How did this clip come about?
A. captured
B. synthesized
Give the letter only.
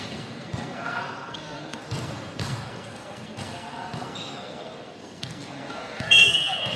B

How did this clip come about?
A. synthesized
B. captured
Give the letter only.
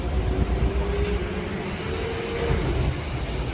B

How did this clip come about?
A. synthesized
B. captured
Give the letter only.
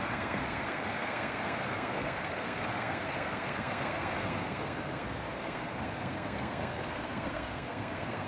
A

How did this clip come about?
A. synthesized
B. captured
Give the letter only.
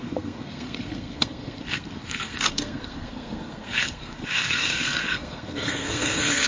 A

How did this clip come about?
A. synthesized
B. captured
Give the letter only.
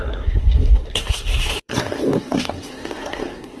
A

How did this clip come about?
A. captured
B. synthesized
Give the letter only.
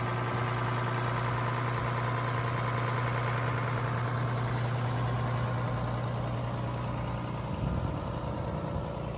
A